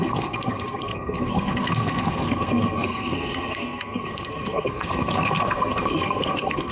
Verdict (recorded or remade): remade